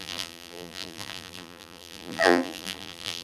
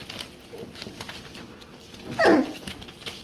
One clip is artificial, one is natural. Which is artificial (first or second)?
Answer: first